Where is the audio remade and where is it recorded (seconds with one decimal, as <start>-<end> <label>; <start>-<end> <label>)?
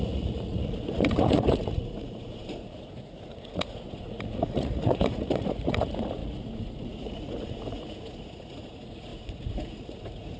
0.0-10.4 remade